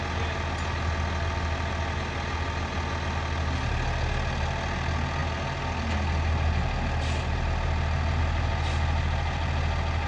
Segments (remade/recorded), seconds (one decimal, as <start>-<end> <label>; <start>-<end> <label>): 0.0-10.1 recorded